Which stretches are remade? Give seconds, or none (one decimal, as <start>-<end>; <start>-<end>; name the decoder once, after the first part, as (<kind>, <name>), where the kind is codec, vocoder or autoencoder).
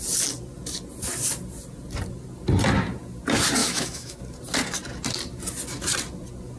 3.6-4.2 (autoencoder, DAC-VAE)